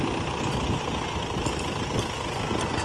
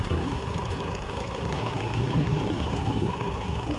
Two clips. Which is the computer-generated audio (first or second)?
second